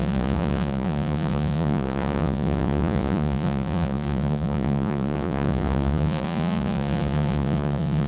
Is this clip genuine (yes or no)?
no